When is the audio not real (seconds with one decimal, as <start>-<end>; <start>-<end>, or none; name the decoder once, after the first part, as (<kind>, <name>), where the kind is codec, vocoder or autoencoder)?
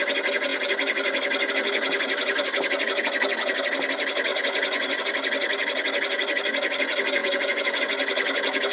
4.3-5.0 (vocoder, Vocos); 7.2-7.8